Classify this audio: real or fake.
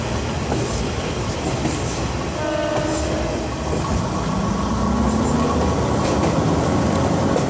real